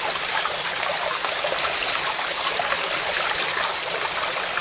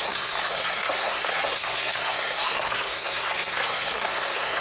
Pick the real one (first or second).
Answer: first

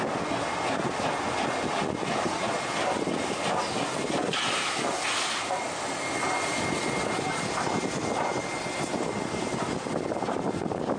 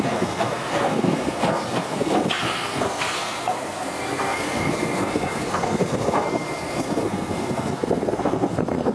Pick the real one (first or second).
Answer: first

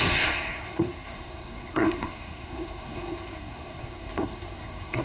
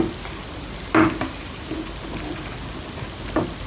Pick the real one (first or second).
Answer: second